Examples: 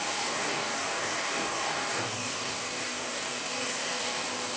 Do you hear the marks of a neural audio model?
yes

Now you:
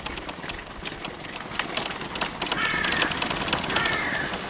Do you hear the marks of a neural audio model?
no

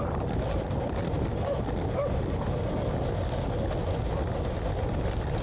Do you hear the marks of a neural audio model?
no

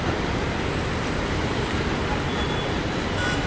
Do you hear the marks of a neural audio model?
yes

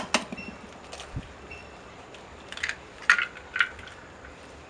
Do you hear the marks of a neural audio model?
no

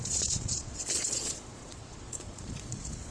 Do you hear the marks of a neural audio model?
yes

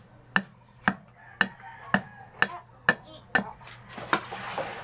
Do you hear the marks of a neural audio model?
no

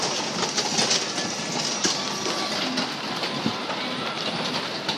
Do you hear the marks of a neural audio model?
no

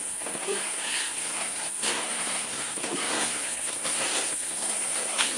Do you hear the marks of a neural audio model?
yes